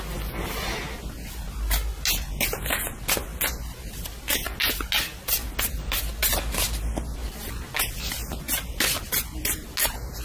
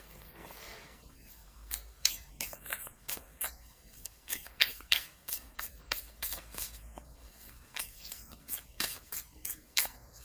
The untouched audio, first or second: first